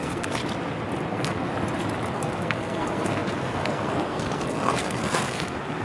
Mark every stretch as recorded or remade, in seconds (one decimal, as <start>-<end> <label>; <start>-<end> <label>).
0.0-0.4 remade; 0.4-1.1 recorded; 1.1-1.5 remade; 1.5-2.1 recorded; 2.1-5.8 remade